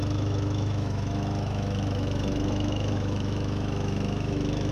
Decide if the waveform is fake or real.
fake